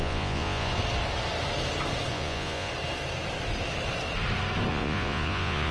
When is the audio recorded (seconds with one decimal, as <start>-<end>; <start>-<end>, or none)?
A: 0.7-2.1; 2.7-4.7